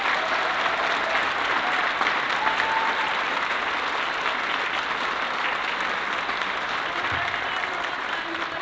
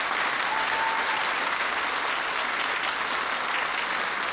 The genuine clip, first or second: second